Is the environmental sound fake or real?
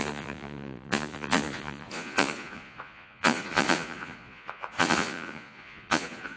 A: fake